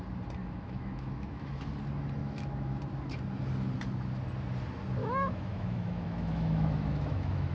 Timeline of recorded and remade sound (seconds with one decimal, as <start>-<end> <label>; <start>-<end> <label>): 0.0-0.4 recorded; 0.4-1.7 remade; 1.7-2.2 recorded; 2.2-2.8 remade; 2.8-5.0 recorded; 5.0-7.5 remade